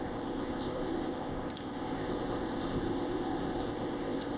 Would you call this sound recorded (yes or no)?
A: no